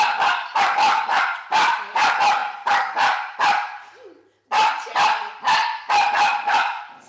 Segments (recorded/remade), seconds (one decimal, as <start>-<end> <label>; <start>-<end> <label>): 0.0-7.1 recorded